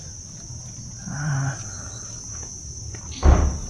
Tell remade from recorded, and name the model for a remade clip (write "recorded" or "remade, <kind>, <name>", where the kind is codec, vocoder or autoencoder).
recorded